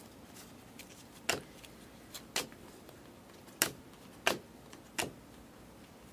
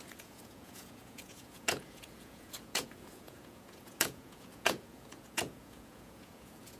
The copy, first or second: second